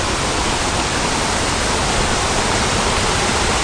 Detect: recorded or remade recorded